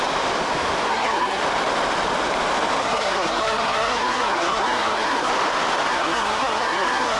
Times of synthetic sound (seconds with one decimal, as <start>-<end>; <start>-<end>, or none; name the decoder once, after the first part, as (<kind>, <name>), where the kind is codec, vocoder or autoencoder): 0.9-1.4 (codec, SNAC); 2.8-5.3; 5.9-7.2